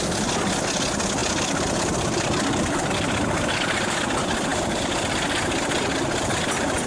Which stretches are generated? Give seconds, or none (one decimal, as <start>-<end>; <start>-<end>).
1.2-2.9; 4.5-6.3